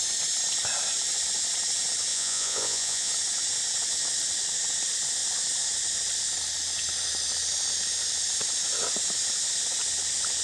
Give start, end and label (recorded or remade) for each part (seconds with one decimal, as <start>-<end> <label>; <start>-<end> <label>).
0.0-2.1 recorded; 2.1-3.1 remade; 3.1-10.4 recorded